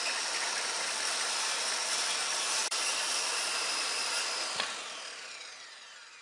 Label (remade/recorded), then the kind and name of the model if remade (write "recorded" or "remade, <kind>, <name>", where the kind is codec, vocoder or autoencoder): remade, vocoder, BigVGAN v2